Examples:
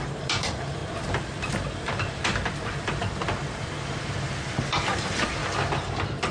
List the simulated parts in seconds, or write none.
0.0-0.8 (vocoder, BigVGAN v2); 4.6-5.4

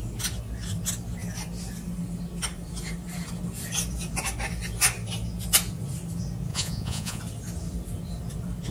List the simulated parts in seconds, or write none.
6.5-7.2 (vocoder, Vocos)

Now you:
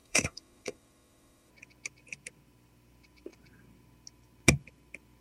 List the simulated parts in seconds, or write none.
0.0-1.5 (autoencoder, DAC-VAE)